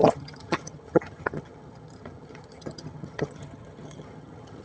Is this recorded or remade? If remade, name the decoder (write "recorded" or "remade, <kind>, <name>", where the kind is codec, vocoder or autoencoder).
remade, vocoder, HiFi-GAN